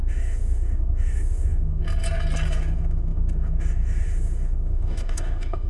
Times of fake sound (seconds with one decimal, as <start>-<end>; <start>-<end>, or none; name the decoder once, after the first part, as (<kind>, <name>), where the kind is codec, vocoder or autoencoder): 0.0-1.8 (autoencoder, DAC-VAE); 2.5-5.7